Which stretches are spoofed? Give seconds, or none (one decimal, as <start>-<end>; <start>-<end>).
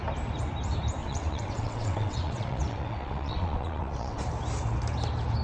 1.0-4.2